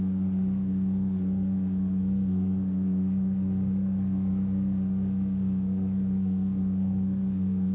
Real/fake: fake